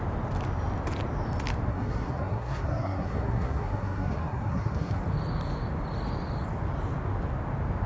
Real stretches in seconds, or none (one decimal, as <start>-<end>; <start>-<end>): 0.0-1.7; 5.0-7.9